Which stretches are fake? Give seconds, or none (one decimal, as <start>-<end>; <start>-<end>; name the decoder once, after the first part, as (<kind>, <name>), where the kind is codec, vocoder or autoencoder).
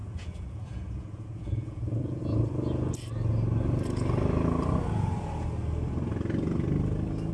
0.0-2.2 (vocoder, Vocos)